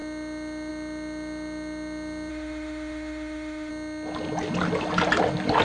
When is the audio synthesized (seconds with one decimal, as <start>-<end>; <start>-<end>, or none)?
2.3-3.7